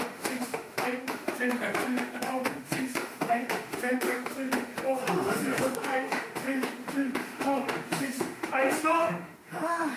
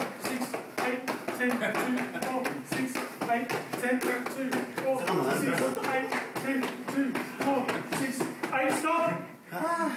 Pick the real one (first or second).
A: second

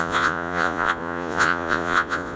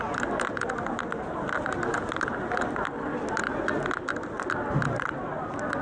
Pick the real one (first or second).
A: second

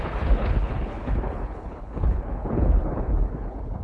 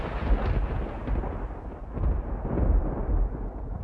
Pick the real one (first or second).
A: second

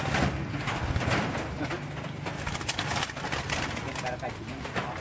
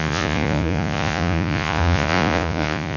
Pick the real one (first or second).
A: first